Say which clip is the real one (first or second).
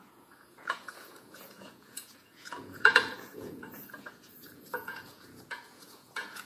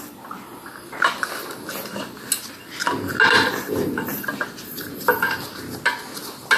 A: second